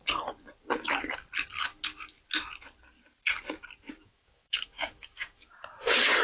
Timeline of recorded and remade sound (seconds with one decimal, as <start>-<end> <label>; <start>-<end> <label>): 0.0-4.0 recorded; 4.0-5.5 remade; 5.5-6.2 recorded